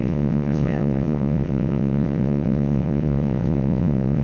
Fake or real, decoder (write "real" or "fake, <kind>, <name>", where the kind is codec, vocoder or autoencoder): fake, vocoder, WaveNeXt